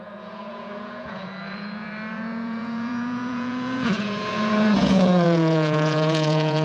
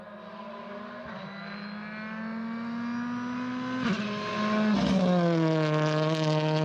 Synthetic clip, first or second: first